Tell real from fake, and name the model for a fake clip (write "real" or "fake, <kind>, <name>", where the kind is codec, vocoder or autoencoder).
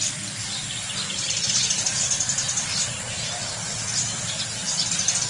fake, vocoder, BigVGAN v2